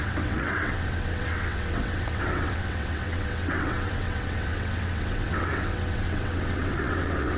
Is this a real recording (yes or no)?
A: no